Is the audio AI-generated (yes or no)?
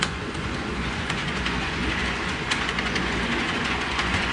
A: yes